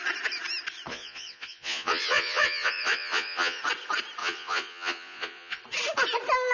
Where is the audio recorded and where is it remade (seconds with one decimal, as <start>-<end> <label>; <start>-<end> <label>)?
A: 0.0-0.9 recorded; 0.9-3.6 remade; 3.6-4.2 recorded; 4.2-5.6 remade; 5.6-6.5 recorded